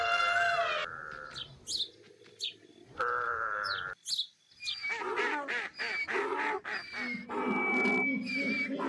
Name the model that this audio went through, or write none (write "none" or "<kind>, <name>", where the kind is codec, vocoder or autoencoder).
none